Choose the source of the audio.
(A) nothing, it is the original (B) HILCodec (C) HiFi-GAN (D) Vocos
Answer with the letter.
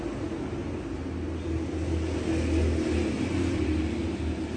A